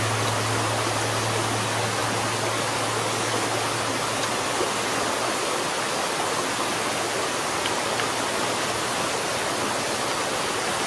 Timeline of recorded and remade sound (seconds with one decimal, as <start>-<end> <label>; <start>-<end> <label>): 0.0-10.9 recorded